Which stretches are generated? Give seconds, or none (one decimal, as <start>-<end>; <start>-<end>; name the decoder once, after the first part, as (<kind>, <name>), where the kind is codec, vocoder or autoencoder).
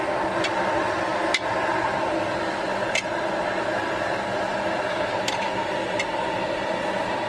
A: none